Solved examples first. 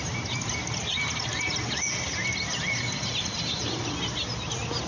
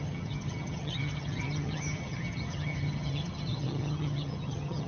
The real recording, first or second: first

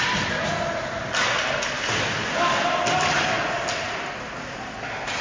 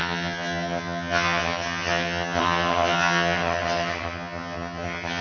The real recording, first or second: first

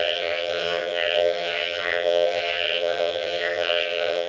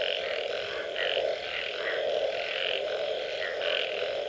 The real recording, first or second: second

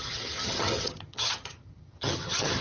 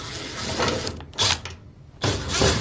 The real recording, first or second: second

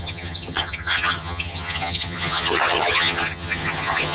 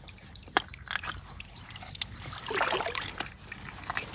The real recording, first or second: second